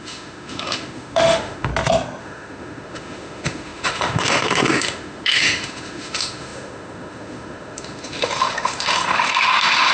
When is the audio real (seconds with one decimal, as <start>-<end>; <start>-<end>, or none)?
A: 1.7-2.2